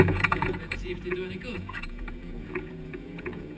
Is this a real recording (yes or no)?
no